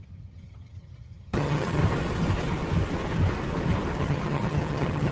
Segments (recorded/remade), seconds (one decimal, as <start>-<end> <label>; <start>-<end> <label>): 0.0-1.8 remade; 1.8-4.0 recorded; 4.0-5.1 remade